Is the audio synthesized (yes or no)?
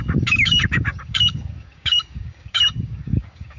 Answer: yes